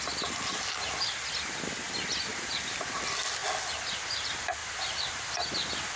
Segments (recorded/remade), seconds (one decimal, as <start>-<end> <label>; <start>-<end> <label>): 0.0-2.3 recorded; 2.3-3.0 remade; 3.0-4.6 recorded; 4.6-6.0 remade